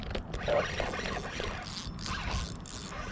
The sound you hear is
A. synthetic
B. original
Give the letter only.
B